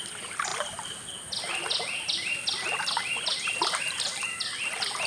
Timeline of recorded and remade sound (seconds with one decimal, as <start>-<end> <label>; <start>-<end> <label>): 0.0-5.1 recorded